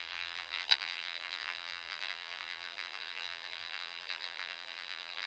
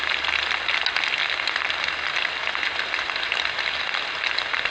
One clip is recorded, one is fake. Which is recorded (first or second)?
second